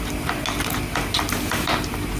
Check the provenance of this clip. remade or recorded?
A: recorded